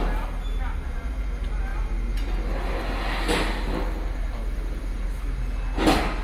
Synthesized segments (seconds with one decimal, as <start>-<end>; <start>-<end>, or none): none

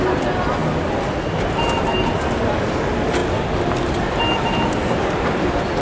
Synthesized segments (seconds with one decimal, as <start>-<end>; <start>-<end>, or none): none

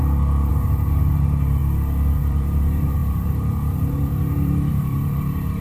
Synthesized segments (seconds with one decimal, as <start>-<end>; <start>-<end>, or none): 0.5-1.6; 2.2-5.6

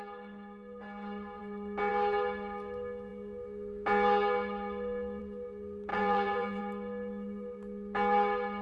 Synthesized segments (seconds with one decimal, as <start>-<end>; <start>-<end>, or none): 5.9-6.6

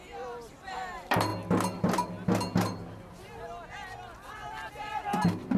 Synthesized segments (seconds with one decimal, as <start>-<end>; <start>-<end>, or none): 0.0-1.3; 4.7-5.6

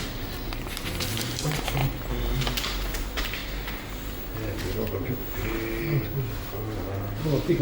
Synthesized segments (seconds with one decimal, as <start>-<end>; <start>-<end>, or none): 0.0-1.8; 2.9-3.4

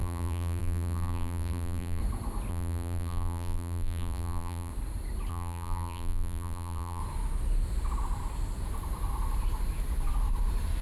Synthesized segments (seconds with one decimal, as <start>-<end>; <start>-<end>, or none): 0.0-2.0; 2.5-4.7; 5.3-7.0